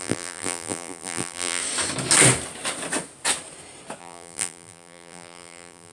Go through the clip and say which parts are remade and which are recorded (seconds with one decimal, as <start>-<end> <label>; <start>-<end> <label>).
0.0-1.6 remade; 1.6-4.0 recorded; 4.0-5.9 remade